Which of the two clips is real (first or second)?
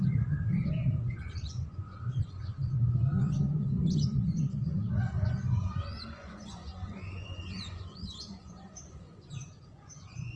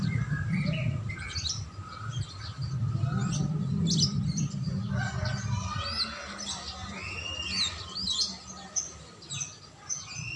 second